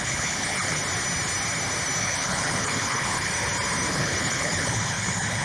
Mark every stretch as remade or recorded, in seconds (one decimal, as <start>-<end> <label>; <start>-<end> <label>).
0.0-0.8 remade; 0.8-2.0 recorded; 2.0-3.3 remade; 3.3-3.9 recorded; 3.9-5.4 remade